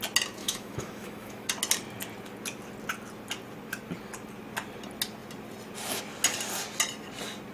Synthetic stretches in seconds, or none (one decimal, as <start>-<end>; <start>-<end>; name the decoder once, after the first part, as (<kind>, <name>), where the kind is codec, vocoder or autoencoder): 0.4-1.5 (autoencoder, DAC-VAE)